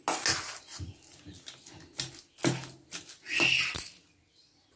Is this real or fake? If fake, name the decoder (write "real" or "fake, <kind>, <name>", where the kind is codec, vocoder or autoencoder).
real